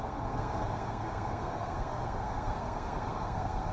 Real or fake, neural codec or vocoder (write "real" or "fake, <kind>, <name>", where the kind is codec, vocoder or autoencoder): fake, codec, SNAC